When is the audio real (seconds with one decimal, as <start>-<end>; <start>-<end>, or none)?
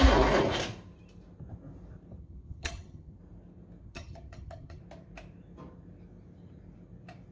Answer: 0.0-2.2; 3.2-3.8; 4.8-7.3